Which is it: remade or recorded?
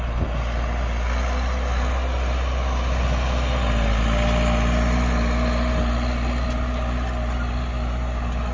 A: recorded